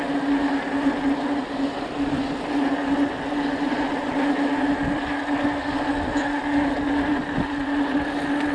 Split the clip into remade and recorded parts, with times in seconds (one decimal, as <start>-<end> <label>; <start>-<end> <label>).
0.0-8.5 recorded